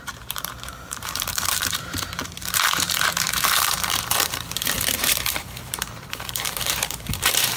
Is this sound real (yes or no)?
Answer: no